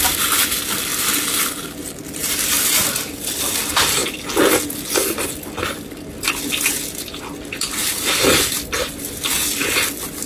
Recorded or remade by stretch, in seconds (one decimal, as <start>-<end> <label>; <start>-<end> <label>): 0.0-0.9 remade; 0.9-2.4 recorded; 2.4-4.0 remade; 4.0-7.2 recorded; 7.2-10.3 remade

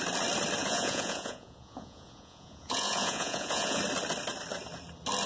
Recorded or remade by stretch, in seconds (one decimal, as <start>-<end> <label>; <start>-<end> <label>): 0.0-0.6 recorded; 0.6-3.8 remade; 3.8-5.3 recorded

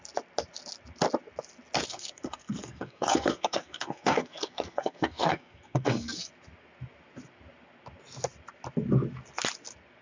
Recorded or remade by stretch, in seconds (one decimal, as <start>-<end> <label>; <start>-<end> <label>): 0.0-1.9 recorded; 1.9-6.3 remade; 6.3-10.0 recorded

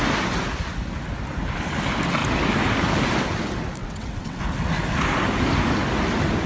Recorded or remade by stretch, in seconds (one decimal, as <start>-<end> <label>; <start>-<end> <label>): 0.0-3.8 recorded; 3.8-4.4 remade; 4.4-6.5 recorded

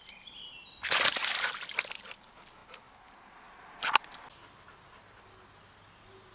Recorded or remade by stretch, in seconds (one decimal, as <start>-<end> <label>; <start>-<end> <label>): 0.0-6.3 recorded